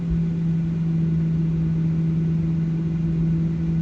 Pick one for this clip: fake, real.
real